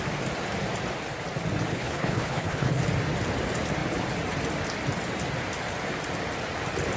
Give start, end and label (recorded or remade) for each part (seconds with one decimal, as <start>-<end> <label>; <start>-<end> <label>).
0.0-1.7 recorded; 1.7-2.8 remade; 2.8-7.0 recorded